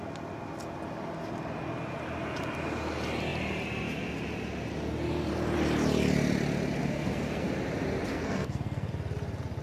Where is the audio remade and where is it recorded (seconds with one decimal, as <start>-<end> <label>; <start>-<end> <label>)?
0.0-6.8 recorded; 6.8-7.5 remade; 7.5-8.1 recorded; 8.1-8.9 remade; 8.9-9.6 recorded

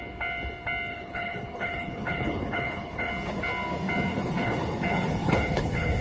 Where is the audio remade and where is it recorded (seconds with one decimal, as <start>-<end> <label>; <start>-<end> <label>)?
0.0-0.9 recorded; 0.9-3.1 remade; 3.1-4.1 recorded; 4.1-6.0 remade

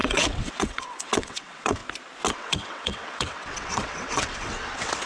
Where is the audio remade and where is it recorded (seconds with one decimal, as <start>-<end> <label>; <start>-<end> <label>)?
0.0-1.8 remade; 1.8-2.3 recorded; 2.3-5.1 remade

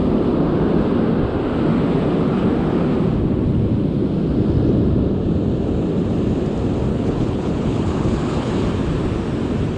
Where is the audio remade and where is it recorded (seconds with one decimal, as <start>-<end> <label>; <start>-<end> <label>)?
0.0-6.9 recorded; 6.9-8.5 remade; 8.5-9.8 recorded